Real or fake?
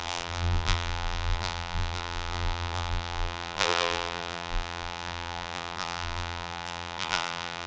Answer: fake